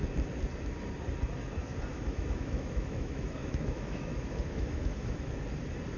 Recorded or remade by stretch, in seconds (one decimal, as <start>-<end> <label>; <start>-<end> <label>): 0.0-1.9 recorded; 1.9-5.3 remade; 5.3-6.0 recorded